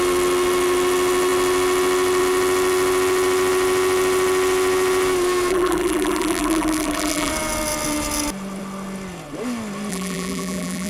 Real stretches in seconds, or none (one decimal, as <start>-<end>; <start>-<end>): 0.0-5.5; 7.3-9.9